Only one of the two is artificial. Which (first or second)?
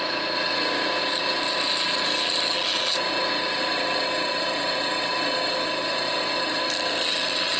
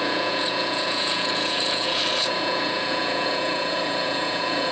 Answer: second